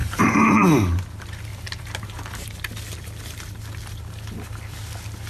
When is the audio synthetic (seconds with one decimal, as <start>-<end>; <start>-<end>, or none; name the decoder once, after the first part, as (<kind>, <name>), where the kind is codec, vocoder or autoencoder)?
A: 0.0-0.7 (vocoder, BigVGAN v2); 1.5-2.1